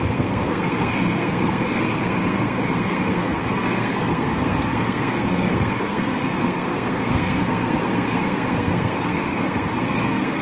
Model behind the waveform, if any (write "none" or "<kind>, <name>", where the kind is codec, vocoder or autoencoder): codec, SNAC